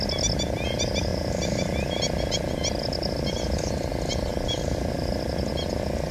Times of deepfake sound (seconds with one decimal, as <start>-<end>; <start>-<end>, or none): none